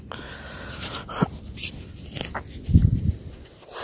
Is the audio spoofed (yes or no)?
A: no